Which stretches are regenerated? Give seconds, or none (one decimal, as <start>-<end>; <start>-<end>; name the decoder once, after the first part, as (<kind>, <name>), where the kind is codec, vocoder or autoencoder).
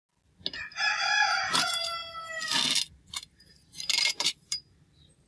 0.6-2.0 (vocoder, BigVGAN v2); 2.9-5.3